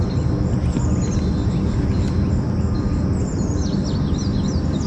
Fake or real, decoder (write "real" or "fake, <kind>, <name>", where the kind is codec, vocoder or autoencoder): real